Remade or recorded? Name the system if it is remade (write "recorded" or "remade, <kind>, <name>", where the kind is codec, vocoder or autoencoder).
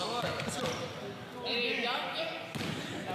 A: recorded